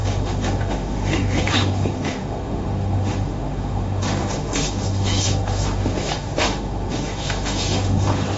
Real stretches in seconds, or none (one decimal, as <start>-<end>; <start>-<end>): none